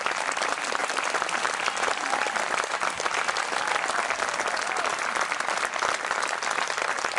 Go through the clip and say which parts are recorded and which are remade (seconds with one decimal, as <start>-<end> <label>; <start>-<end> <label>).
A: 0.0-0.8 remade; 0.8-4.9 recorded; 4.9-7.2 remade